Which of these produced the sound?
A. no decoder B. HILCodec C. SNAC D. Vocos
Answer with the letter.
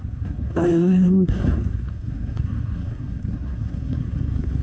C